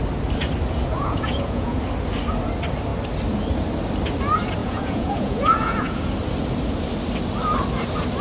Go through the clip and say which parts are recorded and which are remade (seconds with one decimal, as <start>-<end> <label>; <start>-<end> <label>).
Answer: 0.0-0.9 recorded; 0.9-1.8 remade; 1.8-4.6 recorded; 4.6-6.1 remade; 6.1-8.2 recorded